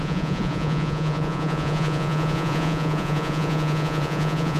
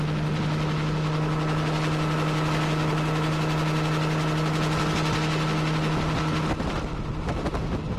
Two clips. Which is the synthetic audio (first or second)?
first